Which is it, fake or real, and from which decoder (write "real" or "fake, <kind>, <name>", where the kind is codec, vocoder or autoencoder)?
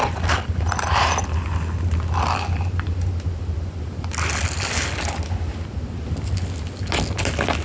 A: real